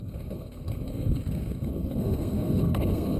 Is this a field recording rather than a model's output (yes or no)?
no